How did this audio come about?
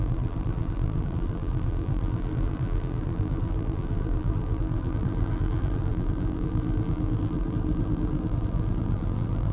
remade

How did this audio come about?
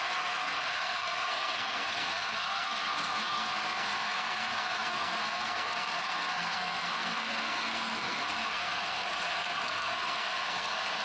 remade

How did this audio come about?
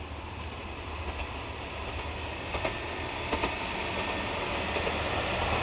recorded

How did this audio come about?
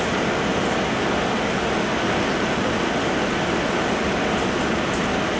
recorded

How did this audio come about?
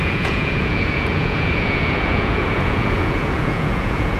remade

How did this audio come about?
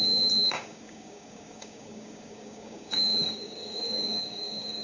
remade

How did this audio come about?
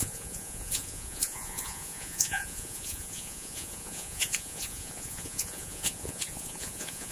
remade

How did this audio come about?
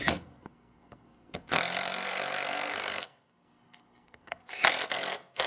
remade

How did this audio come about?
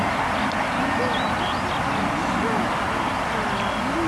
recorded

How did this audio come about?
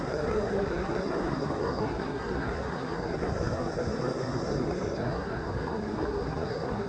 remade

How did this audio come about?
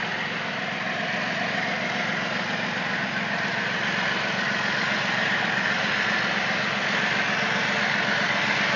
recorded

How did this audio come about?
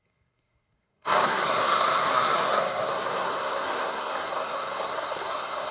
remade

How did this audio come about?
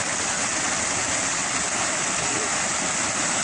recorded